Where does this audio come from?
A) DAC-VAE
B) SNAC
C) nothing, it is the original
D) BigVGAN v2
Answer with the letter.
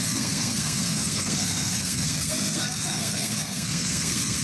B